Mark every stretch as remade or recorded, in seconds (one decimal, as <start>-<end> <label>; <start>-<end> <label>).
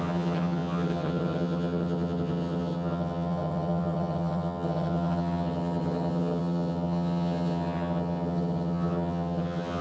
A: 0.0-9.8 remade